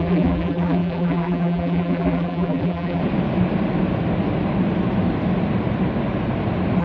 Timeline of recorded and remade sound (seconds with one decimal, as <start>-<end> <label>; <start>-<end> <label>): 0.0-3.0 remade; 3.0-6.8 recorded